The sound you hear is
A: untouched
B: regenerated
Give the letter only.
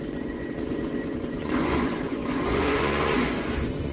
B